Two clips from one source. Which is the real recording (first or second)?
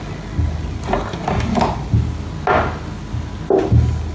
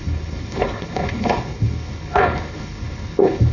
first